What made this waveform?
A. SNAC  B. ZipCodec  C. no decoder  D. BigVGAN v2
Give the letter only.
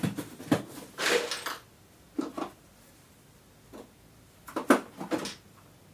C